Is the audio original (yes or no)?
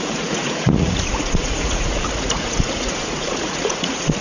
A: no